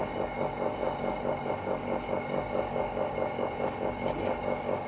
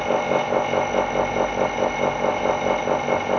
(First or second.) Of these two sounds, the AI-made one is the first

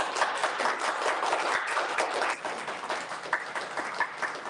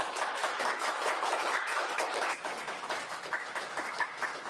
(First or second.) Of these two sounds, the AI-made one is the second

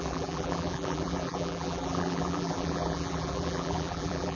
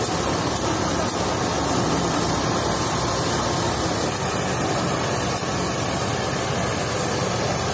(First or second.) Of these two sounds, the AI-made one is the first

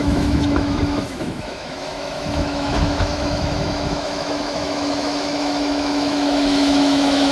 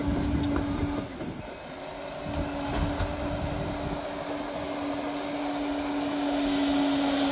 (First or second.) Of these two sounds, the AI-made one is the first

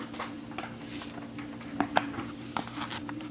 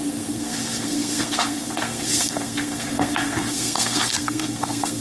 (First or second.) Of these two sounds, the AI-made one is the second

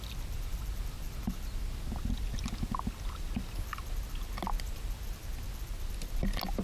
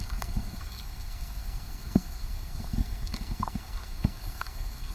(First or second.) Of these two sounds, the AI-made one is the second